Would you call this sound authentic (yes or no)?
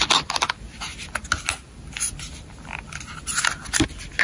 yes